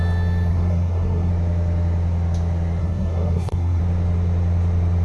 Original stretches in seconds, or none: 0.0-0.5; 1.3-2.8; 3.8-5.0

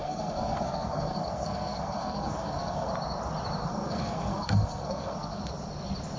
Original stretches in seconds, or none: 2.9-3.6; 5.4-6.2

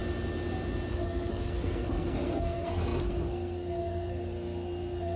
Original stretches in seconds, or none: 0.0-0.9

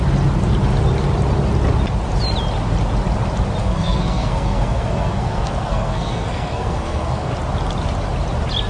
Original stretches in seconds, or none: 0.0-3.6; 7.3-8.7